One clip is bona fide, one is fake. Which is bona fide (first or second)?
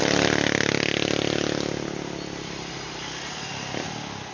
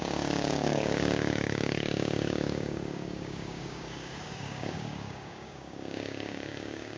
first